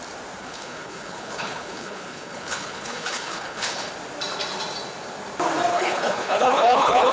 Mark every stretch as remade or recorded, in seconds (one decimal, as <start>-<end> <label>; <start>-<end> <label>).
0.0-0.4 recorded; 0.4-3.9 remade; 3.9-5.7 recorded; 5.7-7.1 remade